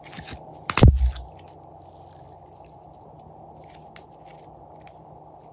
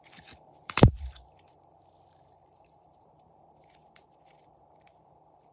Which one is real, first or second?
first